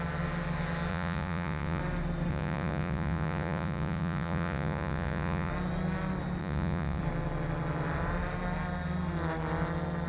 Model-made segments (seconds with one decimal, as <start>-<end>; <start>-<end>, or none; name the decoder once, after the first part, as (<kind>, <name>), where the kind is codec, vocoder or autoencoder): 0.9-1.8 (vocoder, Vocos); 2.3-5.5; 6.4-7.0